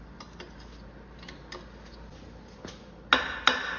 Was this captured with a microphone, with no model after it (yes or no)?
yes